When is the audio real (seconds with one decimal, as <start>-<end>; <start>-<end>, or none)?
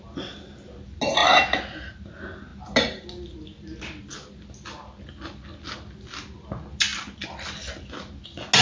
0.0-8.6